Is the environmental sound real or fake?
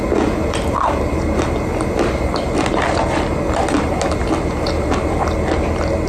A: real